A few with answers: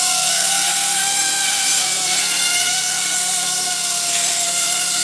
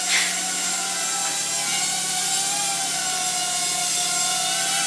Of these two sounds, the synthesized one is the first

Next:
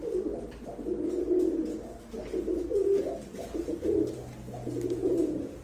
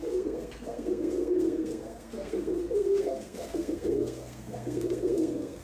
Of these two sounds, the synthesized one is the second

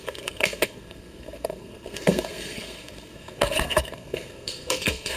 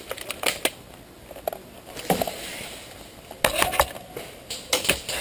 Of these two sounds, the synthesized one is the first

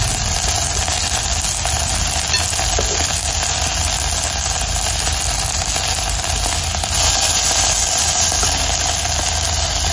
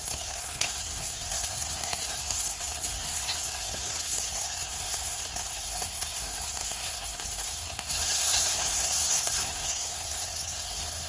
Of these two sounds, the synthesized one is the second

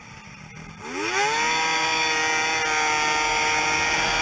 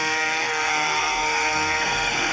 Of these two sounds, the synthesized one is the second